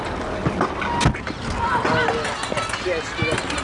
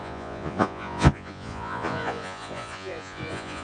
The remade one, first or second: second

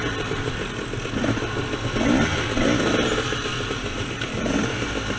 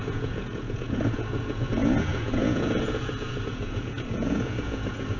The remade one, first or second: second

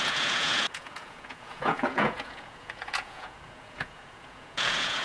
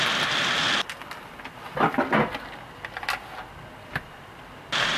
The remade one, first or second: first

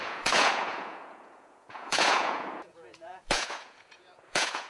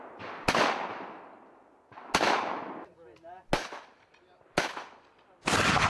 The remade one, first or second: first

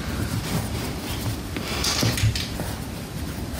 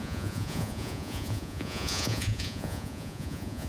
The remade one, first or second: second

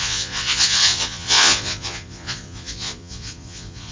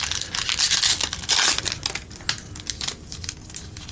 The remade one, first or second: first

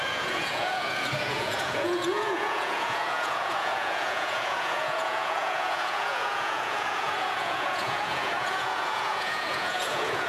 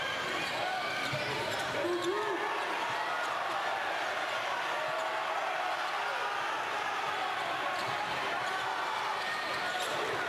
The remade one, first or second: first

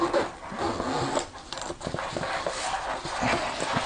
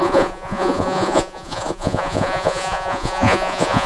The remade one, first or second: second